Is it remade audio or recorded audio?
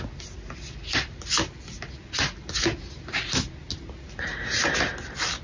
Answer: recorded